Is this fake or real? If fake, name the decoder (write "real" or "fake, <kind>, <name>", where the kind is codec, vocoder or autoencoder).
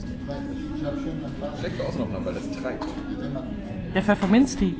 real